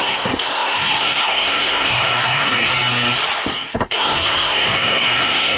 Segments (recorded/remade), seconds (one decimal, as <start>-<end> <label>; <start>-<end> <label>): 0.0-2.7 remade; 2.7-3.5 recorded; 3.5-5.6 remade